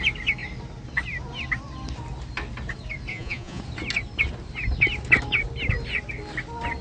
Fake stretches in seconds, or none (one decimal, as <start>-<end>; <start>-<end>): 3.1-3.6